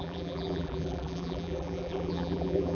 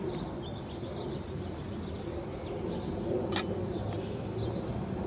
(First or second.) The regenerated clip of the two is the first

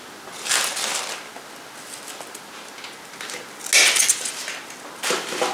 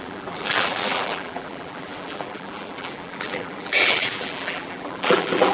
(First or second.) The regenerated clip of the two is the second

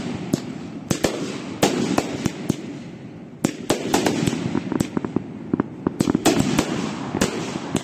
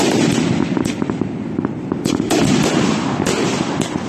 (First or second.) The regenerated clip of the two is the second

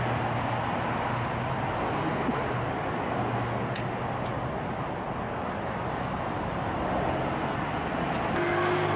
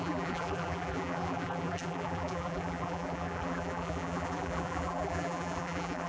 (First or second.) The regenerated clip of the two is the second